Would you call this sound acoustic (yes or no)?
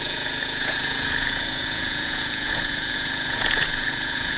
no